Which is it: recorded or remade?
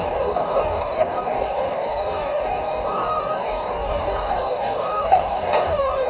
remade